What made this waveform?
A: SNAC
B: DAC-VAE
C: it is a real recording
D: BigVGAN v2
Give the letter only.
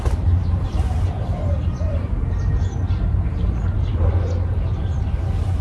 D